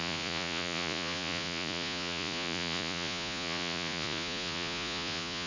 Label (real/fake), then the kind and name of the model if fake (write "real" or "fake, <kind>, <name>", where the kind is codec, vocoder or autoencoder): fake, vocoder, Vocos